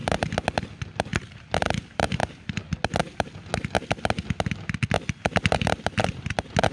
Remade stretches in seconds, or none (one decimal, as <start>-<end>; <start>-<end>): 0.7-1.1; 1.6-2.2; 5.7-6.7